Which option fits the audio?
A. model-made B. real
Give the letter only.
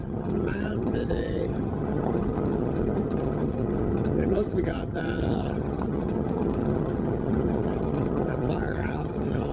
A